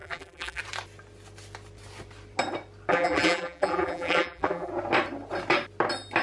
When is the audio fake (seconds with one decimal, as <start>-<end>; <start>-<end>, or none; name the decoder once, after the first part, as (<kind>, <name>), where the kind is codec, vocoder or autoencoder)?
0.0-0.6 (vocoder, BigVGAN v2); 2.9-4.7